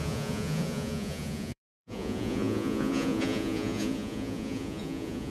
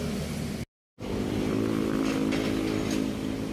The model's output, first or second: first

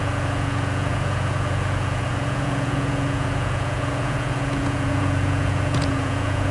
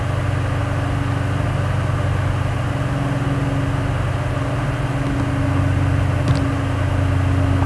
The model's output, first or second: first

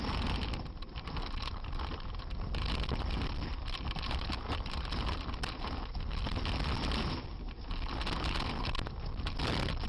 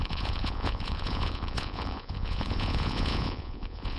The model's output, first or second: second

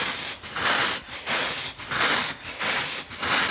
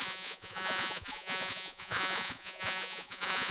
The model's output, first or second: second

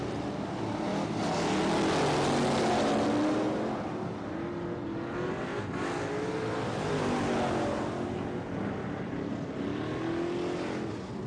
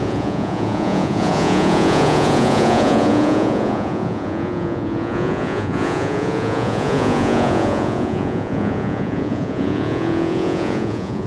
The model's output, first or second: second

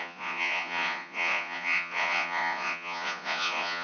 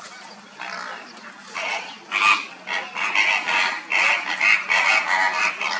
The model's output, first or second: first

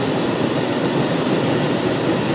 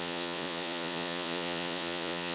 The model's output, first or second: second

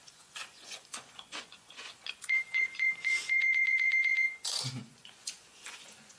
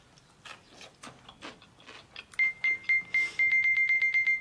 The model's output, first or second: first